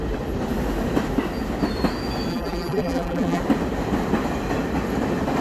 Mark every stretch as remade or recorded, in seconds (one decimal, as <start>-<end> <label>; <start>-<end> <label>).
0.0-2.3 recorded; 2.3-3.4 remade; 3.4-5.4 recorded